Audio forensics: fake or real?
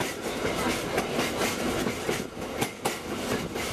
real